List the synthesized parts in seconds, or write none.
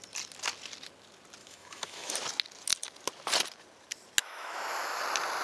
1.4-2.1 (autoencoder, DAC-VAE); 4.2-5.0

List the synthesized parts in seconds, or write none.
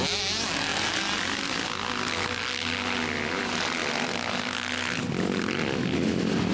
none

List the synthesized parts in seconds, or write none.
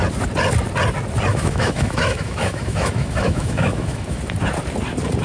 1.3-4.2 (autoencoder, DAC-VAE)